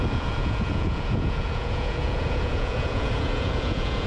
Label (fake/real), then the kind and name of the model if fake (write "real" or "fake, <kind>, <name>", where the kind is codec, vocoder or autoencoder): fake, vocoder, Vocos